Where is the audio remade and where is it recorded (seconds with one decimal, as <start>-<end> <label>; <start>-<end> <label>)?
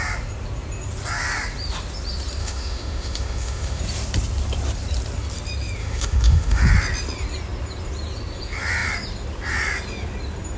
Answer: 0.0-2.4 recorded; 2.4-3.8 remade; 3.8-5.8 recorded; 5.8-6.7 remade; 6.7-10.6 recorded